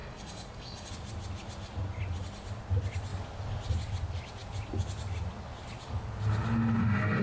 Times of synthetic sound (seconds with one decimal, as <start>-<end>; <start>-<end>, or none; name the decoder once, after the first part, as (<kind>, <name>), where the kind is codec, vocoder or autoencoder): 0.0-0.9 (codec, DAC)